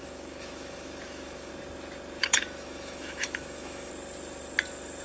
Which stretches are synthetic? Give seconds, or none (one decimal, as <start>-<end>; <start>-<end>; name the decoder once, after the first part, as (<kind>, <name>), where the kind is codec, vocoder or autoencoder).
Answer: 0.0-1.5 (autoencoder, DAC-VAE); 2.2-3.9